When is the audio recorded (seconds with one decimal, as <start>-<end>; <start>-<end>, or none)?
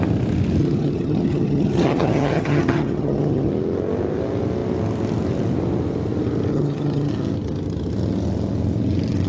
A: 0.0-0.6; 3.5-6.5; 7.1-9.3